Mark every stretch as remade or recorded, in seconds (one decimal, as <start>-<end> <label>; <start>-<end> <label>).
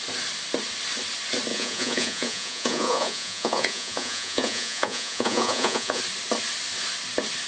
0.0-1.5 recorded; 1.5-6.0 remade; 6.0-7.5 recorded